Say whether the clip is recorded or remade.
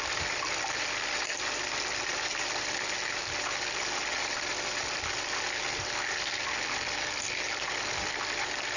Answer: recorded